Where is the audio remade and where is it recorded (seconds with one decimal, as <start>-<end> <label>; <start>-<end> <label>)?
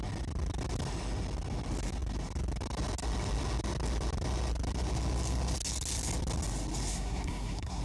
0.0-6.9 recorded; 6.9-7.8 remade